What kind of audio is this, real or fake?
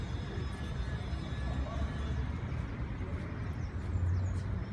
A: real